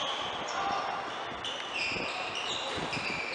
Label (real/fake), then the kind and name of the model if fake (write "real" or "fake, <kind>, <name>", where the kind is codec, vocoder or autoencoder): real